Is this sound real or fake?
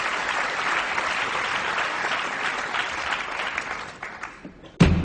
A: real